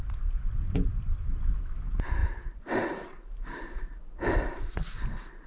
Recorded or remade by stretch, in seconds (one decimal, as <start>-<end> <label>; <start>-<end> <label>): 0.0-2.2 recorded; 2.2-4.7 remade; 4.7-5.5 recorded